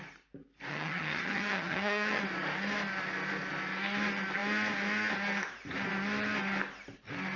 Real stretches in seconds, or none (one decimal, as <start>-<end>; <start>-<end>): 0.0-0.7; 2.2-7.4